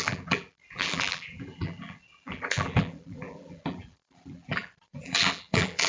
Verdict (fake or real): fake